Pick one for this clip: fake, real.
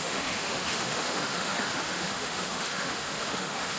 fake